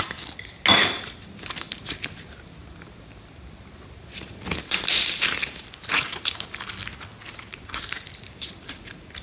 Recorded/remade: recorded